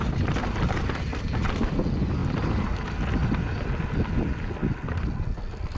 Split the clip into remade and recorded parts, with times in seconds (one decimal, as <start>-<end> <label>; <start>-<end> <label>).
0.0-5.8 recorded